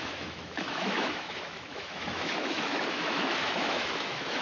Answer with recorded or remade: remade